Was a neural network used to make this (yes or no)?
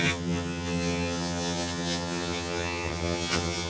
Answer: yes